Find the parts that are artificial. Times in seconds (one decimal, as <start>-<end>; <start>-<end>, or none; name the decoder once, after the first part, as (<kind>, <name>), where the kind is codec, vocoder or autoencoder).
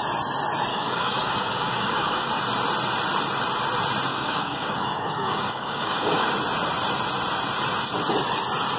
0.7-2.3 (codec, DAC); 4.1-6.3